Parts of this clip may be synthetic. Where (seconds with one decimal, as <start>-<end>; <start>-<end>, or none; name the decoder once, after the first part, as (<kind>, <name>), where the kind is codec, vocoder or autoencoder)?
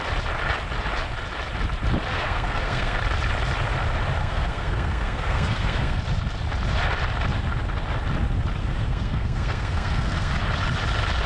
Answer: 2.1-3.0 (codec, SNAC); 4.2-6.0; 8.6-10.3